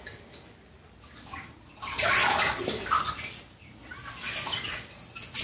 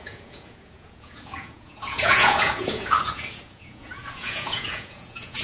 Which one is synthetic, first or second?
second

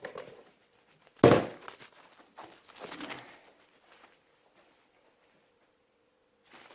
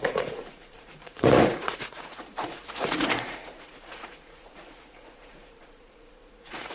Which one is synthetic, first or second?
second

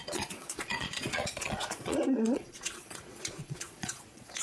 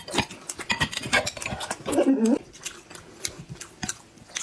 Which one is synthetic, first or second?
first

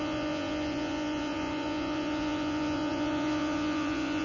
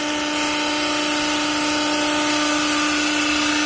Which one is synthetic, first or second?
first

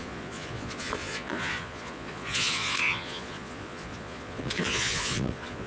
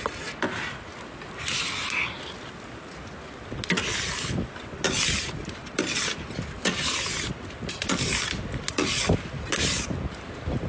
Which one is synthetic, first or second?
first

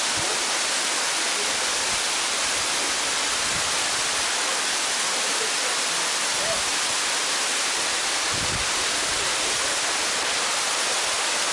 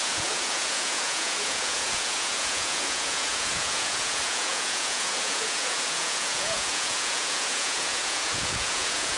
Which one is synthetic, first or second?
second